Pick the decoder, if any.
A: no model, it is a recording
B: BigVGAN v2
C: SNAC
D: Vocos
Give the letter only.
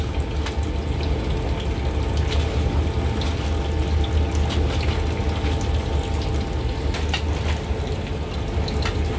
A